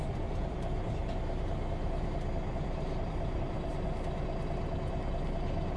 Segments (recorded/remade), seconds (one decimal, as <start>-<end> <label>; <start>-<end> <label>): 0.0-1.0 remade; 1.0-2.5 recorded; 2.5-3.7 remade; 3.7-5.8 recorded